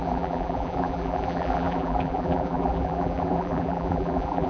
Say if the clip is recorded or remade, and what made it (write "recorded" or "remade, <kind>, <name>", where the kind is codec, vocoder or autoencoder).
remade, vocoder, BigVGAN v2